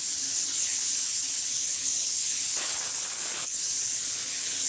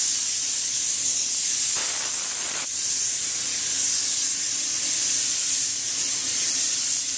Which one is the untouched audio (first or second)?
second